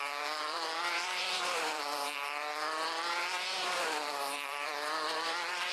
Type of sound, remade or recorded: remade